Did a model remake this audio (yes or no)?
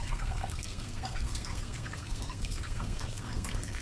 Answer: yes